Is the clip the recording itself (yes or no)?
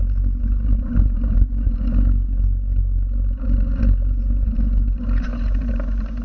yes